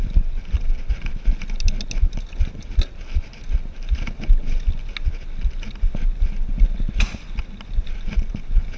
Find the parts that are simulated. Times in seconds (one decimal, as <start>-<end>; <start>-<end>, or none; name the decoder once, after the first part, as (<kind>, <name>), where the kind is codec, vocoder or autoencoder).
none